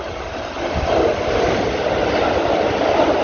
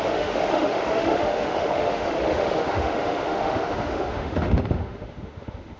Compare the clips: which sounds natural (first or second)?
first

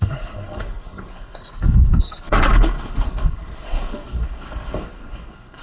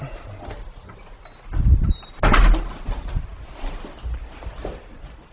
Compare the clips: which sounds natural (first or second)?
second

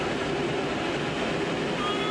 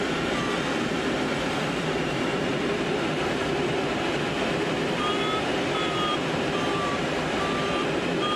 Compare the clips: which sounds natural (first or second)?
first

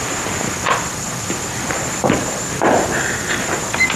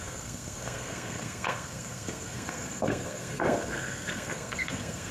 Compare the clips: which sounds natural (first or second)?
first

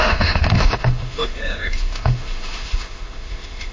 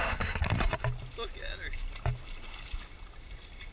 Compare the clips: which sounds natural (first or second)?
second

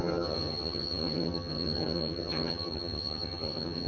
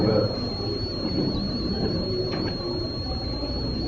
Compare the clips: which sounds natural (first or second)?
second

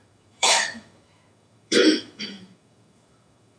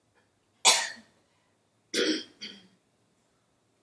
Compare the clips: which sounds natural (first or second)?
second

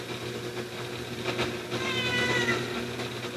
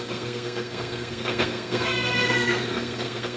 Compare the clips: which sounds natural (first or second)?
first